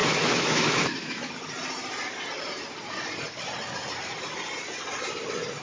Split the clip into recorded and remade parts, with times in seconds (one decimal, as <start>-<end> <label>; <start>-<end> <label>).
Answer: 0.0-1.3 remade; 1.3-5.6 recorded